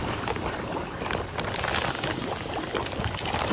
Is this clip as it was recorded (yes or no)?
yes